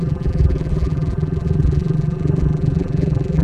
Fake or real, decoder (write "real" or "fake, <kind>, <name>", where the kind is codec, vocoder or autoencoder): fake, vocoder, BigVGAN v2